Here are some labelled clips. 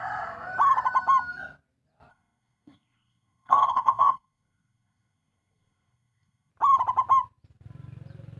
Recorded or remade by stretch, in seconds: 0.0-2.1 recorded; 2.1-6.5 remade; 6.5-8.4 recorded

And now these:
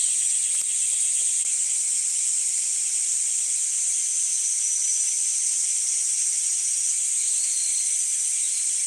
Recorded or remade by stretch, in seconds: 0.0-8.9 recorded

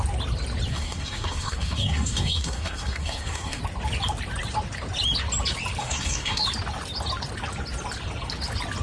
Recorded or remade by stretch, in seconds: 0.0-0.7 recorded; 0.7-3.6 remade; 3.6-5.8 recorded; 5.8-6.4 remade; 6.4-8.8 recorded

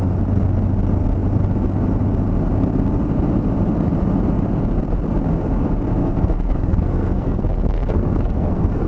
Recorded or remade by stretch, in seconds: 0.0-6.0 recorded; 6.0-8.9 remade

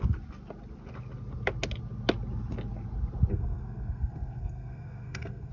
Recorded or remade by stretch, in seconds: 0.0-3.3 recorded; 3.3-5.5 remade

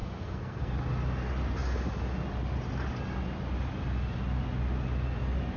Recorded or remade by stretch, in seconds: 0.0-0.7 remade; 0.7-5.6 recorded

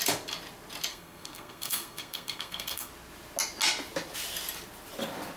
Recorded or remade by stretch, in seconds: 0.0-0.9 recorded; 0.9-2.9 remade; 2.9-5.4 recorded

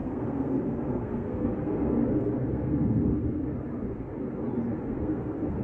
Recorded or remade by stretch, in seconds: 0.0-3.4 remade; 3.4-4.9 recorded; 4.9-5.6 remade